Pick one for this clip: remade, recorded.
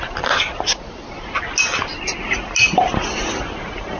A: recorded